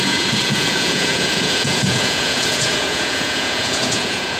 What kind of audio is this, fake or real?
fake